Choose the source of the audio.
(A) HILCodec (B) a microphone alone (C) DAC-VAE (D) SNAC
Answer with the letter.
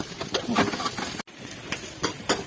B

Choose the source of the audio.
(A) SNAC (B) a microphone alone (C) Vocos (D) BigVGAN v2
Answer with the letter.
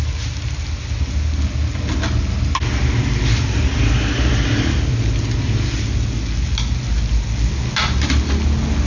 B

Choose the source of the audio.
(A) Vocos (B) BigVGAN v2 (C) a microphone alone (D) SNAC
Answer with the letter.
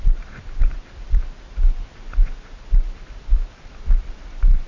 B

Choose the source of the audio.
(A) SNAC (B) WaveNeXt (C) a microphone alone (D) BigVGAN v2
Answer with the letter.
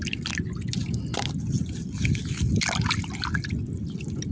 C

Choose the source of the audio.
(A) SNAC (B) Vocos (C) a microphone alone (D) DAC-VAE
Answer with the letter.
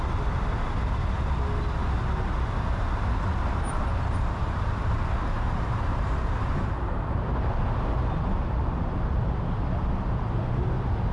C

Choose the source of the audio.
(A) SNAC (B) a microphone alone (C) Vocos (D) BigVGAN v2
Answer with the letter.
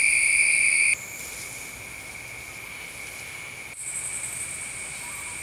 B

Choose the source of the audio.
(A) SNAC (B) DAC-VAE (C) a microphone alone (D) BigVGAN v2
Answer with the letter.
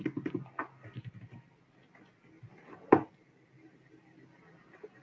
D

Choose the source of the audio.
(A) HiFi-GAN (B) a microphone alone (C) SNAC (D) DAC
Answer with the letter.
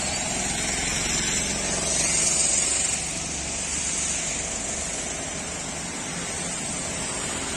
B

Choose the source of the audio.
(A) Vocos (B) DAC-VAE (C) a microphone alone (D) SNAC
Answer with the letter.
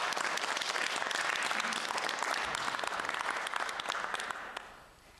C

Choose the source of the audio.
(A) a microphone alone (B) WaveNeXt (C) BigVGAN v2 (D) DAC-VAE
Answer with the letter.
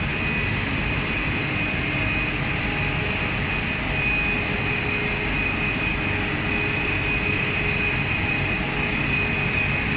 A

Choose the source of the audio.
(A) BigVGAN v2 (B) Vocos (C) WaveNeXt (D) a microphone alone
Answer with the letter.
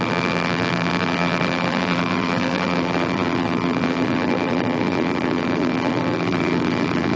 A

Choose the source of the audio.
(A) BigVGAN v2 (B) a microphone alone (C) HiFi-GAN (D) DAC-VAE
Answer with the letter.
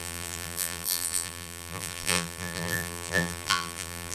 A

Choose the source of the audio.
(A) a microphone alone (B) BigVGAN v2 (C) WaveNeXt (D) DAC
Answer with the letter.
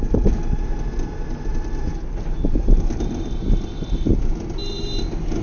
A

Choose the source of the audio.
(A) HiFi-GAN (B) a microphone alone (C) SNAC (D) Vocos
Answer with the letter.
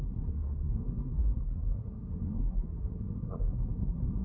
C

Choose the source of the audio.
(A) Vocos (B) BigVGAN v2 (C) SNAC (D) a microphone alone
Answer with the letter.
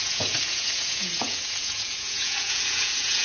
A